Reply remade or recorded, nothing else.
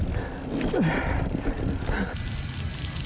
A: recorded